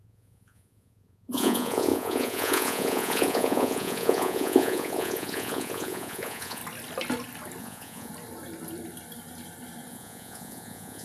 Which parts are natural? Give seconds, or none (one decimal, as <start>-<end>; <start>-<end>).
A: 6.6-7.6; 8.1-9.9